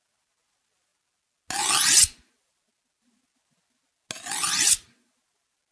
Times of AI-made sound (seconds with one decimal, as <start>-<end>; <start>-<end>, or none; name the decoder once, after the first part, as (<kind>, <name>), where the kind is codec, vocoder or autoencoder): none